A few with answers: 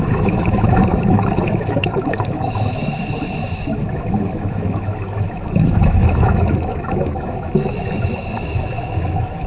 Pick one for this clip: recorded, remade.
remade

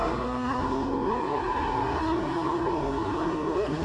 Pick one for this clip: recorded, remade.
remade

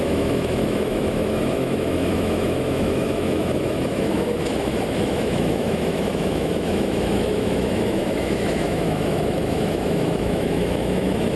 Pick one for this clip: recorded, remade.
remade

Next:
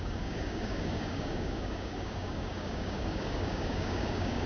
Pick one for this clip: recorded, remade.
remade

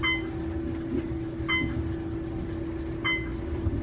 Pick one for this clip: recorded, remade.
recorded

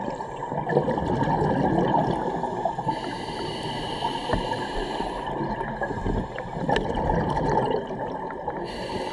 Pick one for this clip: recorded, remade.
recorded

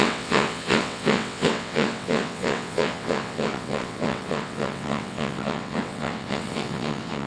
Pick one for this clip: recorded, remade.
remade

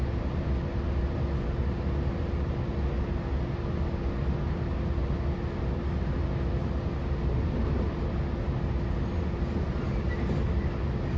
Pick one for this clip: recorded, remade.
recorded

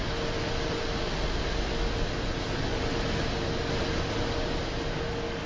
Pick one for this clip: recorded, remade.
recorded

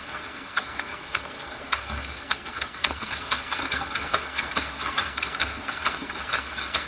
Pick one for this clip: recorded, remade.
remade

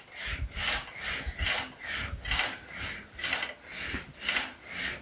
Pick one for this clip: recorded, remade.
recorded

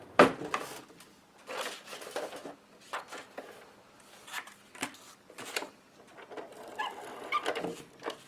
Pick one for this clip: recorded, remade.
recorded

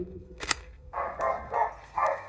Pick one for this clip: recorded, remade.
remade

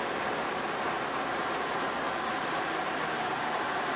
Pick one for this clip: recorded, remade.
recorded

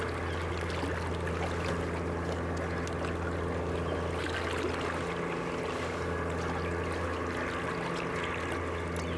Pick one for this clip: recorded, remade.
recorded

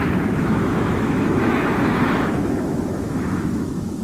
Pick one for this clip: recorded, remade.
remade